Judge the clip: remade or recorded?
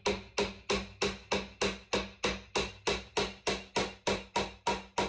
recorded